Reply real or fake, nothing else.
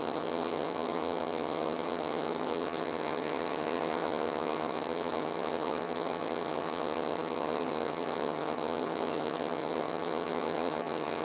fake